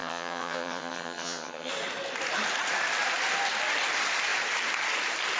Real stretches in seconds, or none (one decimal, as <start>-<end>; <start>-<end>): 1.7-5.4